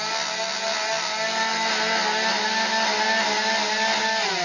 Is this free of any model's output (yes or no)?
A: yes